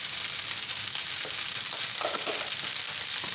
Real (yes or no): yes